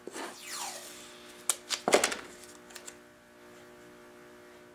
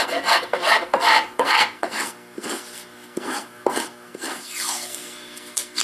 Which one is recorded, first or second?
first